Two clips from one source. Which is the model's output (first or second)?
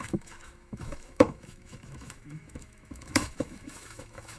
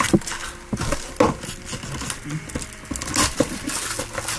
first